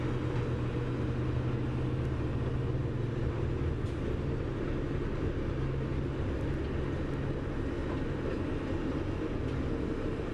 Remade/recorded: recorded